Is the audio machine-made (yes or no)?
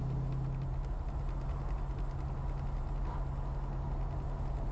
no